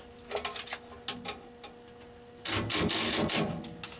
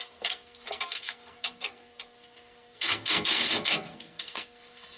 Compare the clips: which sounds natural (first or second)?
first